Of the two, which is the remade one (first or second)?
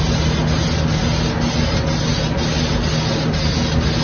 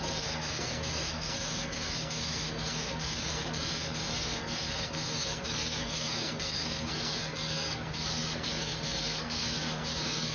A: second